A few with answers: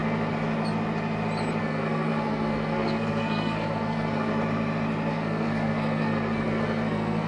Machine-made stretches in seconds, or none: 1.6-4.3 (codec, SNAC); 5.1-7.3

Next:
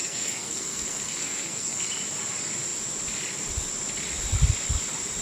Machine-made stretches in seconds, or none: 0.0-1.9 (codec, SNAC)

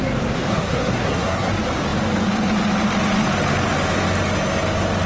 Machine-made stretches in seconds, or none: 0.5-1.5 (codec, SNAC)